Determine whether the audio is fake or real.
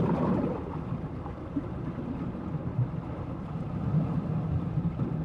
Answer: real